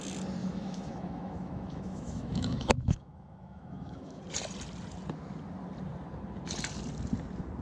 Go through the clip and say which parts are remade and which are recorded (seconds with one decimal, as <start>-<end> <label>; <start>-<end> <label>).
0.0-0.4 recorded; 0.4-4.2 remade; 4.2-7.6 recorded